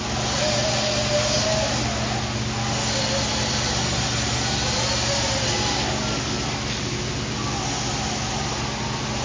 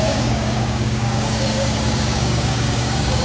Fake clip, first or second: second